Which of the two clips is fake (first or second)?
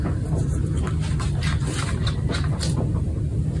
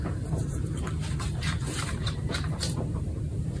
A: second